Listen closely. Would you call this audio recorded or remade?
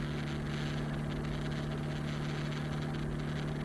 recorded